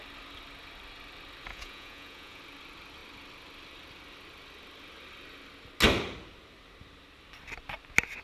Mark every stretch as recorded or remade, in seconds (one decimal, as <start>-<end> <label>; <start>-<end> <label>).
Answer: 0.0-1.5 recorded; 1.5-2.4 remade; 2.4-8.2 recorded